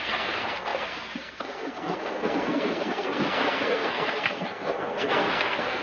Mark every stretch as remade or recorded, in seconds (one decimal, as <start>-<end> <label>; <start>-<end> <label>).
0.0-5.8 remade

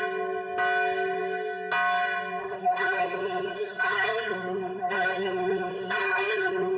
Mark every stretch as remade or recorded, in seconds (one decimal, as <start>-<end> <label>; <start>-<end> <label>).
0.0-2.4 recorded; 2.4-6.8 remade

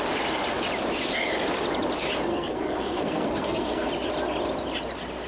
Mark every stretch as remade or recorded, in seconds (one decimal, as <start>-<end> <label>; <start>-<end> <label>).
0.0-2.3 recorded; 2.3-3.9 remade; 3.9-5.3 recorded

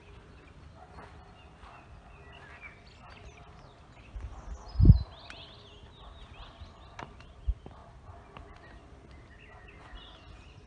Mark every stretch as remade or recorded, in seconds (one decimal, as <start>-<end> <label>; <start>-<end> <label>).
0.0-10.7 recorded

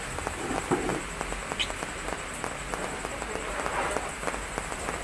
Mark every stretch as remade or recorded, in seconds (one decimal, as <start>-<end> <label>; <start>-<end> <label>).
0.0-5.0 recorded

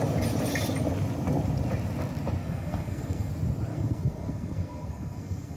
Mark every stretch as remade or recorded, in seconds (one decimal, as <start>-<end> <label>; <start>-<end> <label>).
0.0-2.4 recorded; 2.4-3.3 remade; 3.3-3.7 recorded; 3.7-5.6 remade

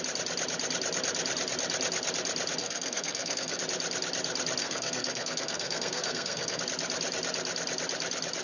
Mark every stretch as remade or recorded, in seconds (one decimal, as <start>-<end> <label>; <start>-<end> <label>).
0.0-2.6 recorded; 2.6-3.6 remade; 3.6-4.6 recorded; 4.6-6.6 remade; 6.6-8.4 recorded